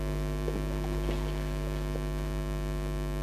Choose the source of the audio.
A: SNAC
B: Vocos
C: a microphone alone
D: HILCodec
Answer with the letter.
C